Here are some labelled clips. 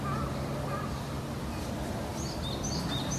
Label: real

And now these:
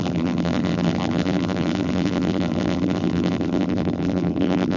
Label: fake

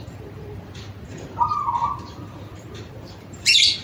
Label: fake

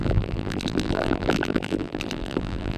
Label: fake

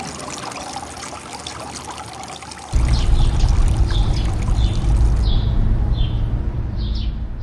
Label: real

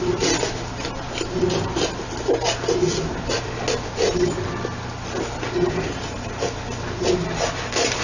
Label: real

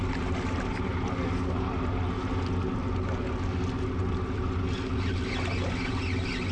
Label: real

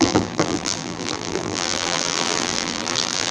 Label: fake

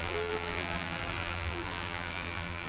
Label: fake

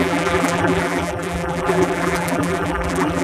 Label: fake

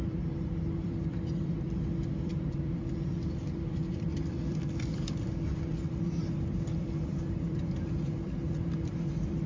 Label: fake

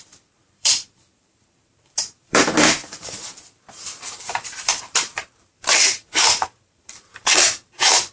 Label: fake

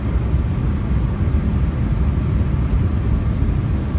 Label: real